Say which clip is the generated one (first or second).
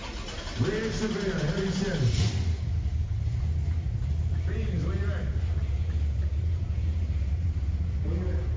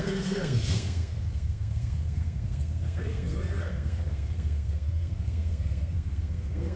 second